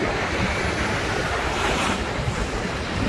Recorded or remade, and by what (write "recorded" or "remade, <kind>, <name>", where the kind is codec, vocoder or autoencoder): remade, vocoder, BigVGAN v2